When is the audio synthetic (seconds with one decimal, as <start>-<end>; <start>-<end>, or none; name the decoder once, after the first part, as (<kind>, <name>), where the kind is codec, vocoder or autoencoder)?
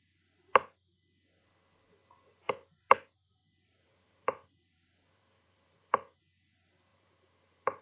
3.4-6.2 (vocoder, BigVGAN v2); 6.9-7.8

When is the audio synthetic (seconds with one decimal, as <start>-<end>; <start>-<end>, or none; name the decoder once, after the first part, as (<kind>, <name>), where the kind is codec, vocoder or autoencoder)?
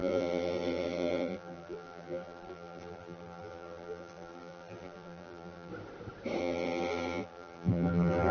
0.0-5.7 (vocoder, BigVGAN v2); 6.4-8.3